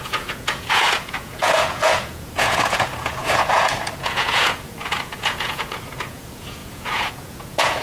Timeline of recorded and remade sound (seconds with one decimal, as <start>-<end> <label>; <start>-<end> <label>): 0.0-7.8 remade

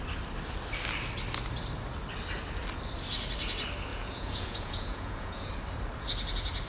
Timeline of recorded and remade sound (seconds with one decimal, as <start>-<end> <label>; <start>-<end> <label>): 0.0-3.9 recorded; 3.9-5.5 remade; 5.5-6.7 recorded